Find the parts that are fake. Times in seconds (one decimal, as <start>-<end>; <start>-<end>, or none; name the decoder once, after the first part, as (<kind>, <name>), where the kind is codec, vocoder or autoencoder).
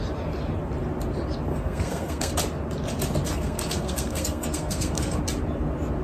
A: 1.5-2.3 (codec, SNAC); 3.3-5.2